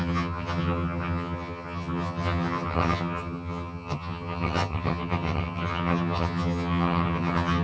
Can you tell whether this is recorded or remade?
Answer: remade